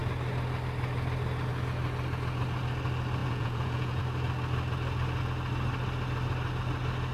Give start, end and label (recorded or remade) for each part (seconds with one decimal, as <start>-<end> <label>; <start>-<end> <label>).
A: 0.0-3.2 recorded; 3.2-4.0 remade; 4.0-7.1 recorded

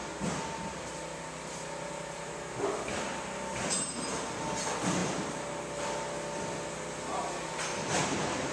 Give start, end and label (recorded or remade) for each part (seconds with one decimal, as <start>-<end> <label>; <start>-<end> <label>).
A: 0.0-8.5 recorded

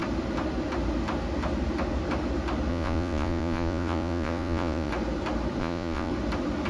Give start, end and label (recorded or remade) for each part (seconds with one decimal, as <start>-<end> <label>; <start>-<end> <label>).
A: 0.0-2.7 recorded; 2.7-4.9 remade; 4.9-5.6 recorded; 5.6-6.1 remade; 6.1-6.7 recorded

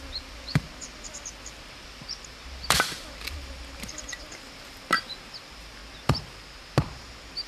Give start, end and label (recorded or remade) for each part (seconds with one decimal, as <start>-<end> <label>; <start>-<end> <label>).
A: 0.0-5.8 remade; 5.8-7.5 recorded

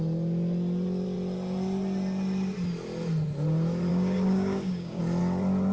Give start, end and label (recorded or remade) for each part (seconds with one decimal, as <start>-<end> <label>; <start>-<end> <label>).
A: 0.0-3.9 recorded; 3.9-5.0 remade; 5.0-5.7 recorded

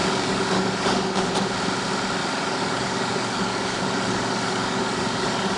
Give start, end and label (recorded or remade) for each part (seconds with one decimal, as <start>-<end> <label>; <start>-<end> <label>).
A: 0.0-1.3 remade; 1.3-2.2 recorded; 2.2-5.6 remade